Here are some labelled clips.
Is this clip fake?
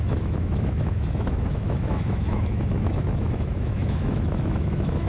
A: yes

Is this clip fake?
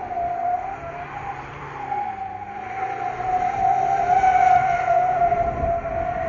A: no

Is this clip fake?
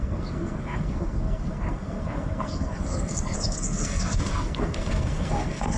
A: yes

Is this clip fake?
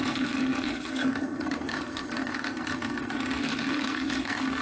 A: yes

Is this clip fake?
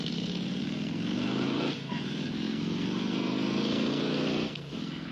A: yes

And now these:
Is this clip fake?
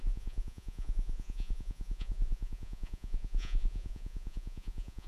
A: yes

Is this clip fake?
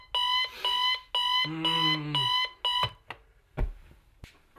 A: no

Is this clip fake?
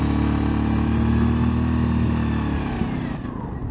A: no